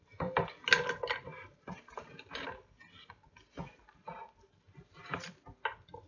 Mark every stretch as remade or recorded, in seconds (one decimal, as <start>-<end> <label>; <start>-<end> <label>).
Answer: 0.0-6.1 recorded